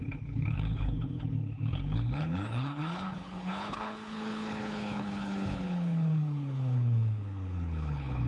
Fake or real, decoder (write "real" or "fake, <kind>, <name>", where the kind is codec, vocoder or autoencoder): fake, codec, HILCodec